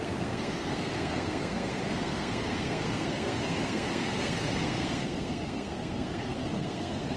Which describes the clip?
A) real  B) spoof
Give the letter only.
B